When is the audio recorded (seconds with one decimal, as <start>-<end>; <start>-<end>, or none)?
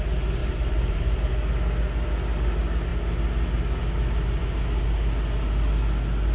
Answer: 0.0-0.4; 1.3-6.3